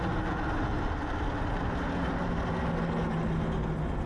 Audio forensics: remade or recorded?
recorded